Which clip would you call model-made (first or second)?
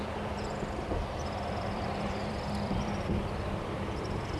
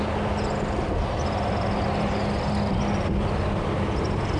first